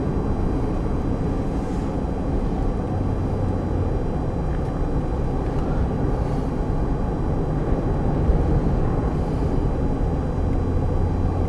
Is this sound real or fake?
real